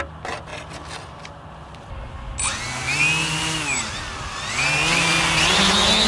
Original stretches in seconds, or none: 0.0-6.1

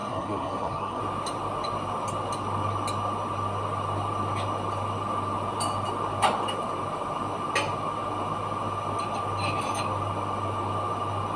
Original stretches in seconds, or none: 1.0-11.4

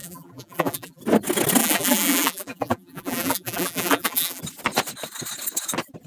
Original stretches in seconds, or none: 1.0-1.6; 4.4-6.1